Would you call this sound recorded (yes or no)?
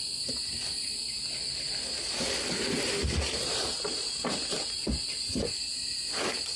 yes